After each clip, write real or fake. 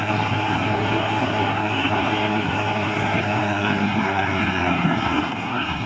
fake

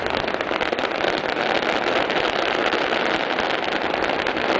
fake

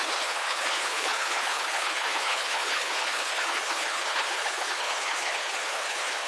fake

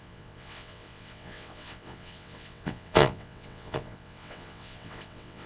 fake